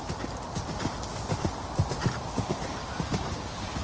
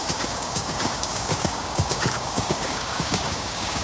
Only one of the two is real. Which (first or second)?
first